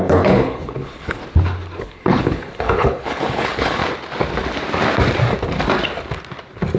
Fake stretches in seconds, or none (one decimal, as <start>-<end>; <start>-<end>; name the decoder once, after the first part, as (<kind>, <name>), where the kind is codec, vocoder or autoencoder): 0.0-1.2 (codec, HILCodec); 1.8-3.8